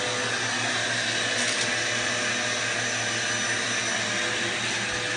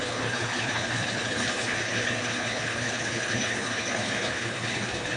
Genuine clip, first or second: first